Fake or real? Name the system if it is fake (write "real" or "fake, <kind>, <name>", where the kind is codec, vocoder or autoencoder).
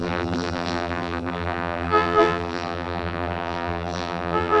fake, vocoder, BigVGAN v2